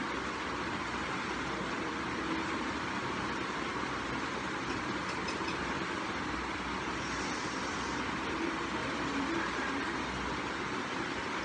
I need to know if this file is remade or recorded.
recorded